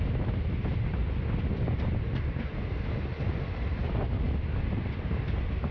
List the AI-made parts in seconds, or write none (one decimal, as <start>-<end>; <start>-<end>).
none